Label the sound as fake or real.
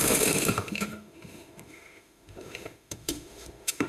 fake